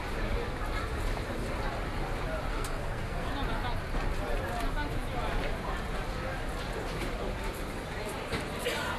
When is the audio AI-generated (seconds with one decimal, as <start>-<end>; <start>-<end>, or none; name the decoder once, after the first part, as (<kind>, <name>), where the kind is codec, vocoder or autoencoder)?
2.5-3.3 (codec, SNAC)